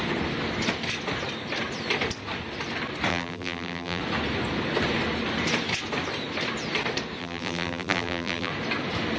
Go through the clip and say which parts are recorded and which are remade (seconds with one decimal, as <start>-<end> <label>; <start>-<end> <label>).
0.0-3.1 recorded; 3.1-4.0 remade; 4.0-7.2 recorded; 7.2-8.5 remade; 8.5-9.2 recorded